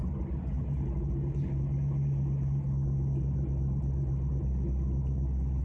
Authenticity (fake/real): real